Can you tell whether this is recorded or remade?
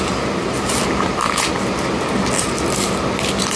recorded